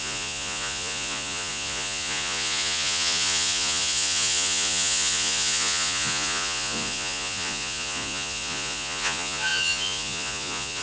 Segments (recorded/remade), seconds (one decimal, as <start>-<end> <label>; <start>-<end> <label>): 0.0-10.8 remade